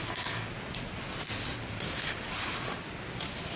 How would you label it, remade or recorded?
recorded